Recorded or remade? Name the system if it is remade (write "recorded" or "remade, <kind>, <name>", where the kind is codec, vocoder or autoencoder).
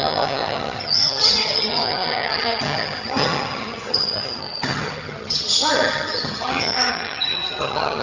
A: remade, vocoder, HiFi-GAN